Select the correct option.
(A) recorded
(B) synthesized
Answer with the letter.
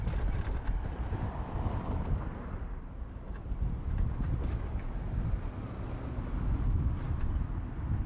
A